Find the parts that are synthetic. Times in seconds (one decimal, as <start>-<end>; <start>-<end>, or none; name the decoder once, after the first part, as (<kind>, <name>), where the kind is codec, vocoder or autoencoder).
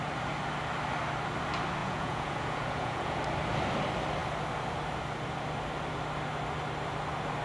1.8-3.2 (vocoder, Vocos)